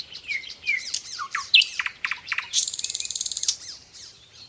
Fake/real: fake